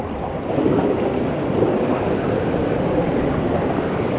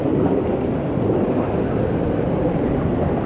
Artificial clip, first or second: first